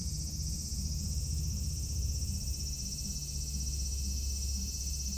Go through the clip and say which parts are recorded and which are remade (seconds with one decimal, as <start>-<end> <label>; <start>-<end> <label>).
0.0-5.2 recorded